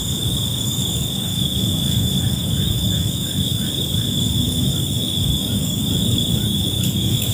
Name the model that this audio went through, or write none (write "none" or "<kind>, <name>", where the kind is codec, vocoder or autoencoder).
codec, DAC